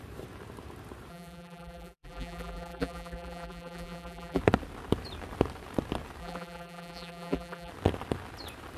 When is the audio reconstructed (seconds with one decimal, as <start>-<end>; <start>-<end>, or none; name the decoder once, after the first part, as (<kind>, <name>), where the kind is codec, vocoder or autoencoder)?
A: 1.1-4.4 (vocoder, BigVGAN v2); 6.2-7.7